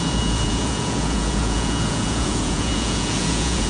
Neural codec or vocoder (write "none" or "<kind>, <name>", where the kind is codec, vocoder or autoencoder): vocoder, Vocos